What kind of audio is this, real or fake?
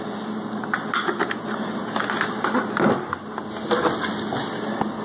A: real